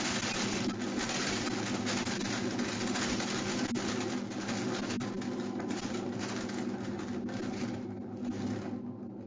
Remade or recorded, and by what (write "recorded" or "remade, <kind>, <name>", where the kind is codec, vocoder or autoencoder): recorded